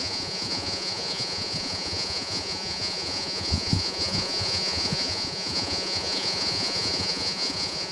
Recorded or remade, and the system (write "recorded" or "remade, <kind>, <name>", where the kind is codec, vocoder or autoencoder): remade, vocoder, Vocos